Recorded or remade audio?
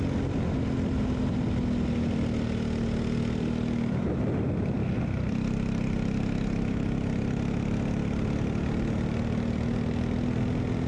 recorded